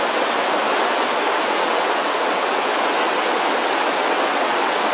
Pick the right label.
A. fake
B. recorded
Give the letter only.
A